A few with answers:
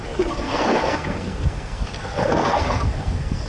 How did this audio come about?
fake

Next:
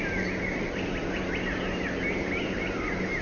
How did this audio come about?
real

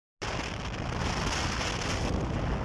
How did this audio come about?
real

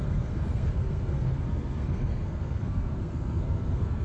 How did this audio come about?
fake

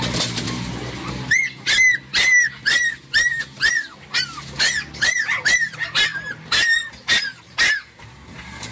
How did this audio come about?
real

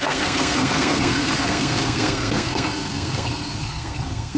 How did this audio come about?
fake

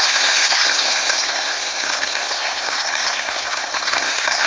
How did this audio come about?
fake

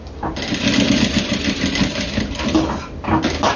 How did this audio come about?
real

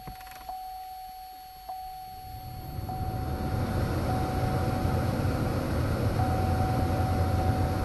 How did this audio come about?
real